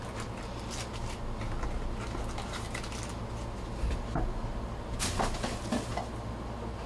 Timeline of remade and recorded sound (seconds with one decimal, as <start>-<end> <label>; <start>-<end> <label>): 0.0-6.9 recorded